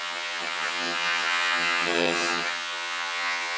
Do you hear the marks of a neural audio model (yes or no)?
yes